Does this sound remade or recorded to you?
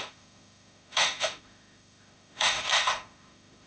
remade